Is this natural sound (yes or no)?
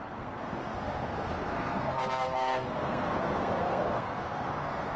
no